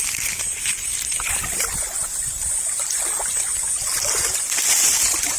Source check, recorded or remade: remade